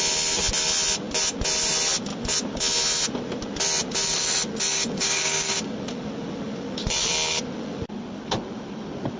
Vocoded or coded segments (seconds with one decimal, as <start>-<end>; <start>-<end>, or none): 4.7-5.7